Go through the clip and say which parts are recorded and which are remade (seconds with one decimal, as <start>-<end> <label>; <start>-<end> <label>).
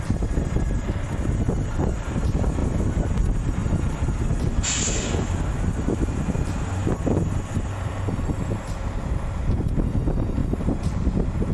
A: 0.0-2.6 recorded; 2.6-3.1 remade; 3.1-10.4 recorded; 10.4-11.5 remade